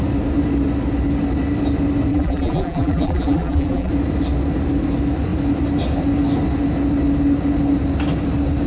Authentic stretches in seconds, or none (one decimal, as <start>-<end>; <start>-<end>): 0.0-2.1; 3.9-8.7